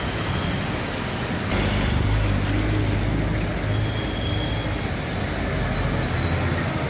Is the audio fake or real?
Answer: real